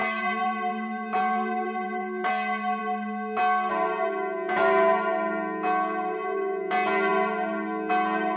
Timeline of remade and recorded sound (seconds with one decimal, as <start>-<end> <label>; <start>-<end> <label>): 0.0-2.3 remade; 2.3-8.4 recorded